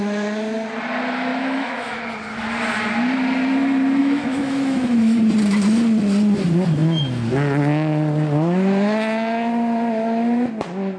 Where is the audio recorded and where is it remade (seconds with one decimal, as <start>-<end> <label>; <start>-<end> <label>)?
0.0-1.3 recorded; 1.3-2.0 remade; 2.0-4.0 recorded; 4.0-5.2 remade; 5.2-11.0 recorded